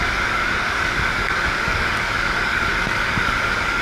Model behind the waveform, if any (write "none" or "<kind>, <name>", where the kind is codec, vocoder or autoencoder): codec, DAC